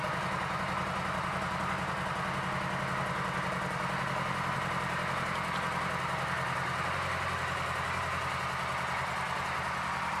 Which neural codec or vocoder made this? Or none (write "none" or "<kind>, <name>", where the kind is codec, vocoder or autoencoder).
none